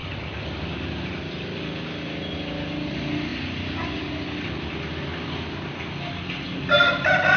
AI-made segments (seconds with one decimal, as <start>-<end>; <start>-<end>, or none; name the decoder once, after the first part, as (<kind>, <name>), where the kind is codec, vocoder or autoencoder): none